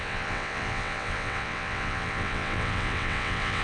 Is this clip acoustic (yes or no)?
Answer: no